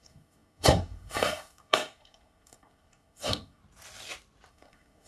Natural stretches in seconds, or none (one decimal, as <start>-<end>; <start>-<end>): 3.6-4.5